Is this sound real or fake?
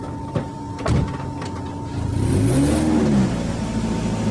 real